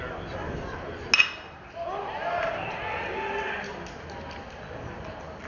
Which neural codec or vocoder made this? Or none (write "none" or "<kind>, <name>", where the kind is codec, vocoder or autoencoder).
none